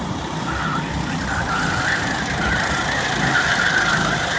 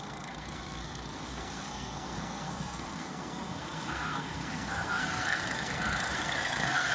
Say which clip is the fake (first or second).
second